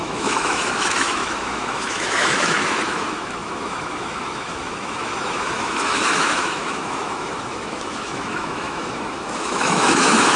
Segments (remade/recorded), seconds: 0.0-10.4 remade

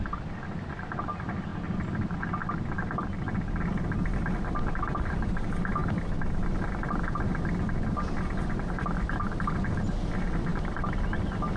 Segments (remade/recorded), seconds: 0.0-11.6 recorded